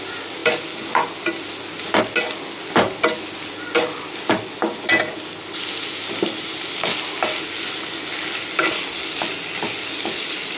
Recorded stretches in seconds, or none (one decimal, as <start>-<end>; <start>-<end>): 0.0-10.6

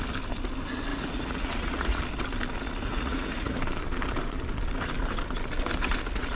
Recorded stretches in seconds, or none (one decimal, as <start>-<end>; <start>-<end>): 0.0-0.9; 2.0-2.9; 3.6-6.3

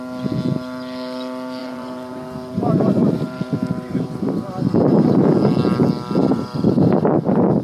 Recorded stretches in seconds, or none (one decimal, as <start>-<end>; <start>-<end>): 0.0-1.6; 5.2-6.2; 7.0-7.6

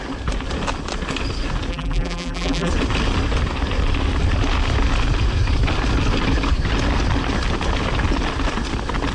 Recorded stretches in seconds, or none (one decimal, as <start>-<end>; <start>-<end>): 0.0-1.7; 2.7-9.1

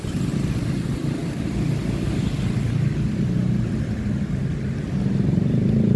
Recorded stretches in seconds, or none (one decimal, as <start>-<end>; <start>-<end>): 0.0-6.0

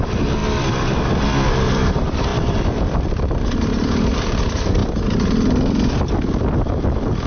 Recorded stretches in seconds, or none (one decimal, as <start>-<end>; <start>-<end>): 4.8-7.3

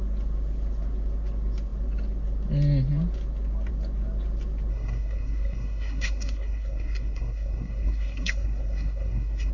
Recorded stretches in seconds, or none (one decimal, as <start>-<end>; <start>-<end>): 0.0-4.7

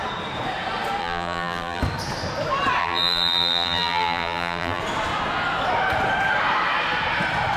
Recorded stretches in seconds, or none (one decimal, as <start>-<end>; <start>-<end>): 0.0-1.0; 1.8-2.8; 4.8-7.6